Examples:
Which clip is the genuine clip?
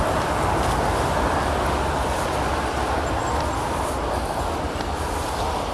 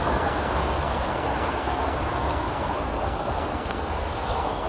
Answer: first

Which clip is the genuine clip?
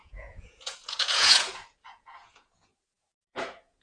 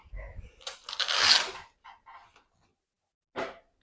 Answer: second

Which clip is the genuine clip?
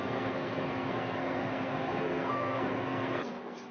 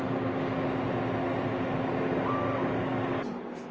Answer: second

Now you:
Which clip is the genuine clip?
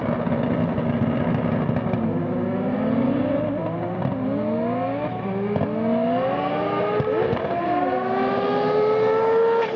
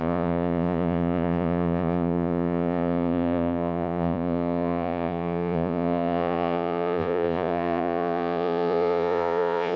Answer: first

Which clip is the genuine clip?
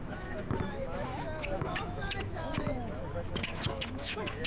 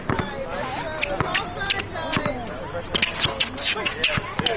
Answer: second